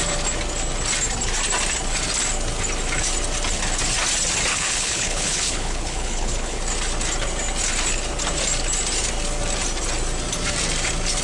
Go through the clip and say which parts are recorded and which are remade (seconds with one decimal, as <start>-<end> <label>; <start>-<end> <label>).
0.0-4.5 recorded; 4.5-6.6 remade; 6.6-11.2 recorded